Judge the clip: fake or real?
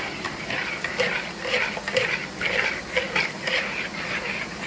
real